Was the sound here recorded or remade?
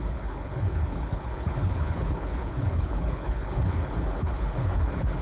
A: remade